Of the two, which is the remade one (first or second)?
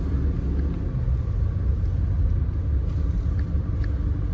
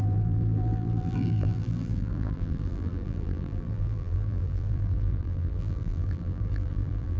second